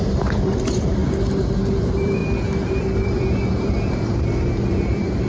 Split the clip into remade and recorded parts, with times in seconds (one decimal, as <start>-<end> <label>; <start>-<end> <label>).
0.0-1.0 remade; 1.0-1.7 recorded; 1.7-2.2 remade; 2.2-2.7 recorded; 2.7-5.3 remade